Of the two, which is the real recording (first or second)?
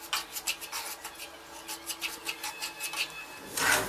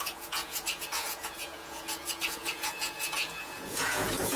first